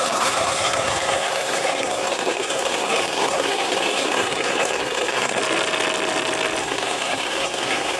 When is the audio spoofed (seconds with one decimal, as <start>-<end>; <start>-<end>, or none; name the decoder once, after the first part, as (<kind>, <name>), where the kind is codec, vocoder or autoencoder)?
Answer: 0.0-5.4 (codec, SNAC); 6.6-8.0

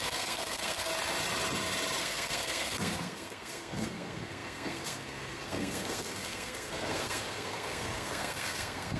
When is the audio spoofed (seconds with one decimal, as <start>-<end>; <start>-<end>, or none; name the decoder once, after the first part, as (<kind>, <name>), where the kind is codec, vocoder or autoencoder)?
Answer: 0.0-0.9 (codec, SNAC); 2.0-9.0

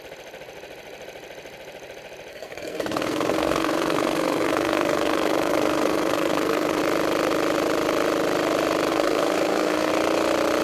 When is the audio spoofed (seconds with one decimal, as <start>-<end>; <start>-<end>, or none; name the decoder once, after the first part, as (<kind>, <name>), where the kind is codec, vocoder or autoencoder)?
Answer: 2.3-6.8 (codec, SNAC); 8.9-9.9

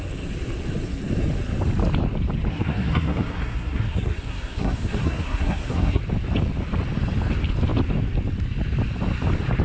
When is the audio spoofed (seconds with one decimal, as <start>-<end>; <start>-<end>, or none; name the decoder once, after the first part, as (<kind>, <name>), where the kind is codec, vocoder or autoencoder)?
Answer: 2.5-6.0 (codec, SNAC)

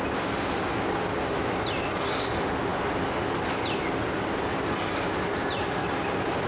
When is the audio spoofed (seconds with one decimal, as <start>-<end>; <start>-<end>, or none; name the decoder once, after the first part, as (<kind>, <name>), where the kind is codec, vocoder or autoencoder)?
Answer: none

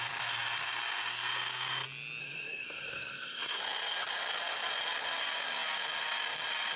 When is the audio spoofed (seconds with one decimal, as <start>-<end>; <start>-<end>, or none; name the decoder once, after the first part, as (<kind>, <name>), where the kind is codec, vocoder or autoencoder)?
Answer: 2.2-3.6 (codec, SNAC)

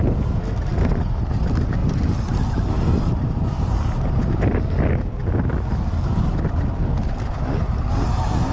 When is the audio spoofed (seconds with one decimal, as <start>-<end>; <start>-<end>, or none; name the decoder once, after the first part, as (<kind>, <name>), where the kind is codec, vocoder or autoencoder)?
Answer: none